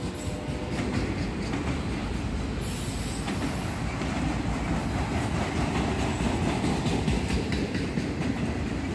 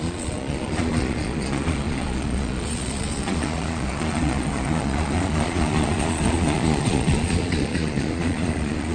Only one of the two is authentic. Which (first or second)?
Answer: first